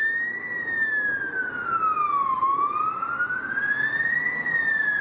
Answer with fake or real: real